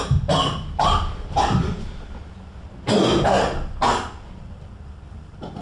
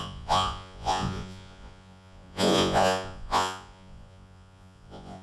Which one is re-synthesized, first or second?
second